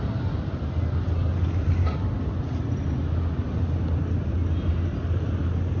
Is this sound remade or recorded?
recorded